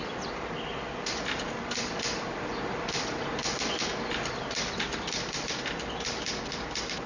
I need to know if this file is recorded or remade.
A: recorded